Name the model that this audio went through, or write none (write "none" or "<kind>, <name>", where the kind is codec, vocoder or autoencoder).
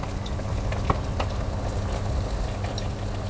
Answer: none